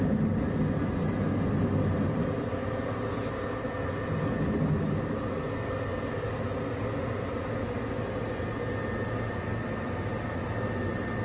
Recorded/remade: recorded